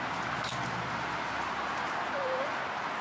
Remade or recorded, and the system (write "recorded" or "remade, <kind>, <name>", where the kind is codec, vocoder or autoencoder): recorded